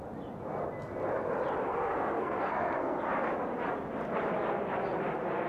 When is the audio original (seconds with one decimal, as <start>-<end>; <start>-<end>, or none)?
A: 0.0-1.6; 3.1-5.5